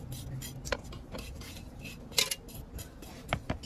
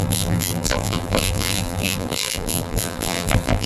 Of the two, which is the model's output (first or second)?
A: second